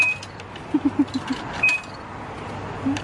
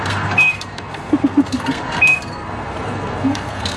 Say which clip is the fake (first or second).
second